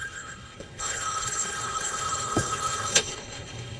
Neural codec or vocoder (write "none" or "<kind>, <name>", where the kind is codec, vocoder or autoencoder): codec, HILCodec